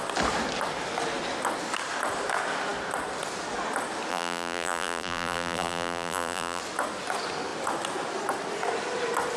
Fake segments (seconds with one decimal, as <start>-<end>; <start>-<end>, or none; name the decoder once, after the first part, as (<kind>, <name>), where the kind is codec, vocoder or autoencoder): 4.1-6.6 (vocoder, BigVGAN v2)